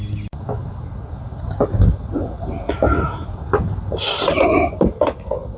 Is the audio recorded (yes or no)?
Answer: yes